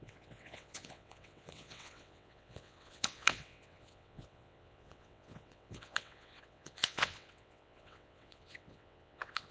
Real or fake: fake